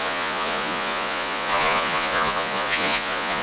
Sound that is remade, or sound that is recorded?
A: remade